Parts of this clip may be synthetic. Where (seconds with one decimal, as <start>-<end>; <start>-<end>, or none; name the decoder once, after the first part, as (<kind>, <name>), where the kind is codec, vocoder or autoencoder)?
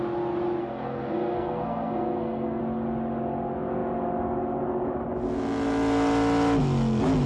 0.6-2.6 (codec, SNAC)